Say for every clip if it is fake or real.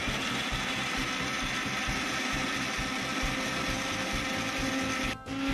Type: real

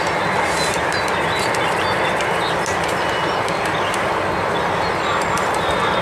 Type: real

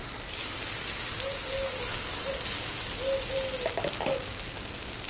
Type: real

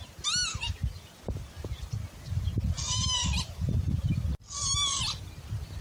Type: real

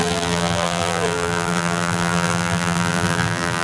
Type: fake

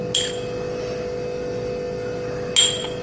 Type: real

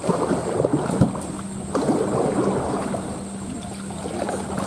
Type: real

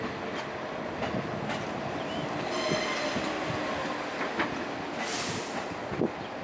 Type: real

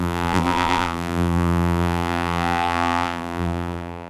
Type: fake